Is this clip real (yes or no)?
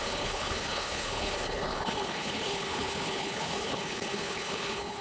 no